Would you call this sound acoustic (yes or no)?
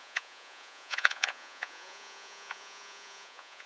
no